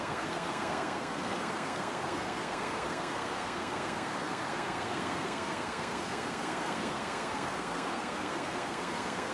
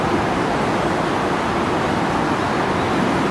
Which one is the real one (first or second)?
second